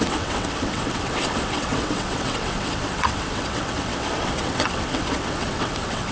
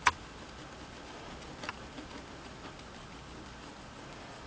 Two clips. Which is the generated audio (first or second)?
first